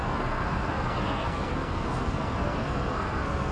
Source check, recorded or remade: remade